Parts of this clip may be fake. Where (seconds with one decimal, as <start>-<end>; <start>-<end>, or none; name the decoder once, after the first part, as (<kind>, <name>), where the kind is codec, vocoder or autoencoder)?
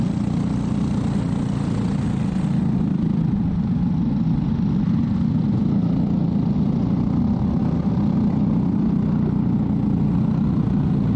none